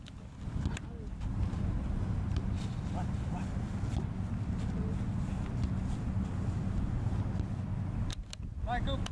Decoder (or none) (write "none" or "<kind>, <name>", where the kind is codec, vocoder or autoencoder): none